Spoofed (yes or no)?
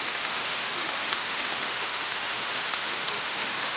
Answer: yes